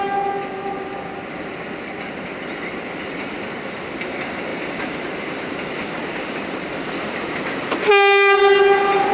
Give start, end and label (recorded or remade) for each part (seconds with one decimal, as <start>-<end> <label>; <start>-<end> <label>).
0.0-9.1 recorded